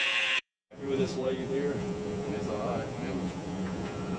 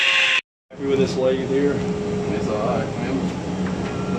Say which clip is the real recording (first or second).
second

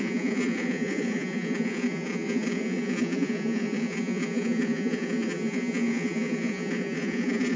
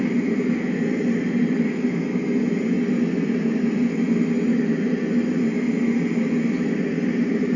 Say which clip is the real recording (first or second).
second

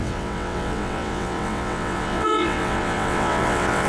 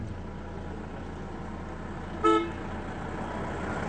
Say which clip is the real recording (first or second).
second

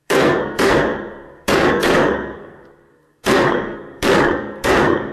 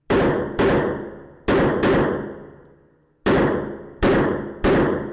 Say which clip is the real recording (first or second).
second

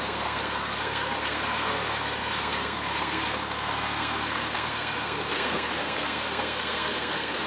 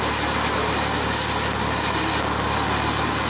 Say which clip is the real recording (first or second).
second